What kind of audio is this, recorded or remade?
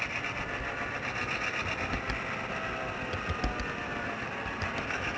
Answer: recorded